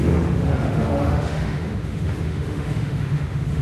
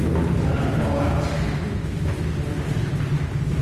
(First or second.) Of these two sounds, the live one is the second